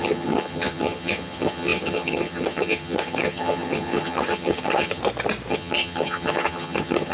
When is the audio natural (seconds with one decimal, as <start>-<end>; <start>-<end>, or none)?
5.0-5.5